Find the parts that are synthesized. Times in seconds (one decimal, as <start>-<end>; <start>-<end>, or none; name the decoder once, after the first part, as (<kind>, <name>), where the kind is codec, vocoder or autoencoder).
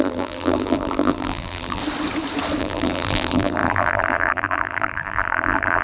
0.0-1.8 (vocoder, BigVGAN v2); 2.6-5.8